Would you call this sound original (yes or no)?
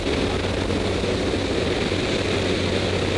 yes